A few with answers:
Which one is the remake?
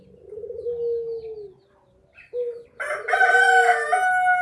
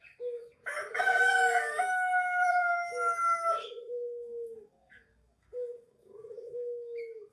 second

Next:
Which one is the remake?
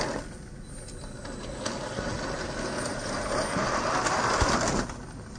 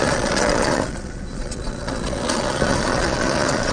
second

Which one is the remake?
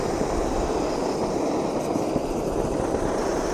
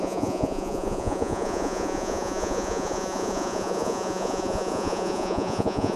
second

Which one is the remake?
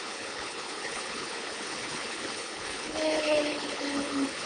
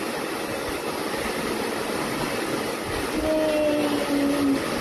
first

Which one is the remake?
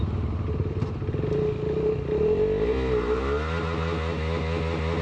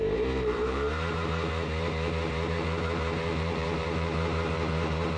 second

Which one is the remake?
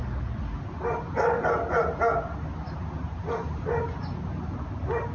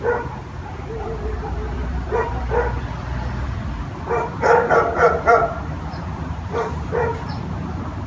second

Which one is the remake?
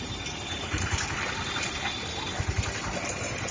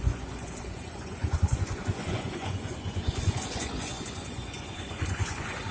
second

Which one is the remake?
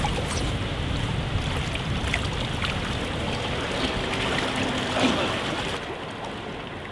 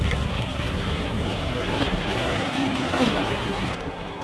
second